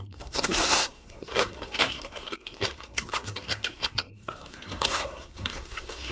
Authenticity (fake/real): fake